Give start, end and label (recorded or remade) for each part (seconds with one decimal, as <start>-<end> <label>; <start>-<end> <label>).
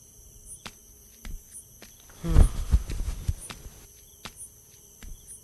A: 0.0-5.4 recorded